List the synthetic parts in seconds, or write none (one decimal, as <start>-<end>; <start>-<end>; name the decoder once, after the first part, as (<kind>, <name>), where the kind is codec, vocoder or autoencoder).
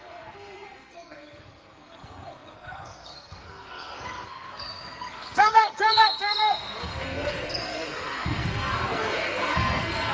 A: 0.0-10.1 (codec, SNAC)